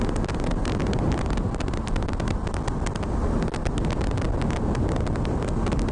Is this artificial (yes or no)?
yes